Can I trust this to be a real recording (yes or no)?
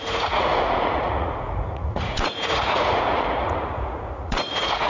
no